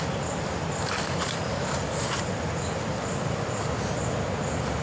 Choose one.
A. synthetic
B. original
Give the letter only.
B